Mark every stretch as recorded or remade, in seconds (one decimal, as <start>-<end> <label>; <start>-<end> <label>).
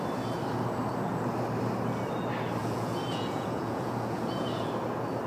0.0-2.6 recorded; 2.6-4.7 remade; 4.7-5.3 recorded